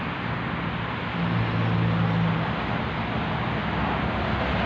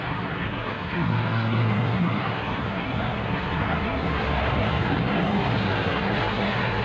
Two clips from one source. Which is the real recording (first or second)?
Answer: first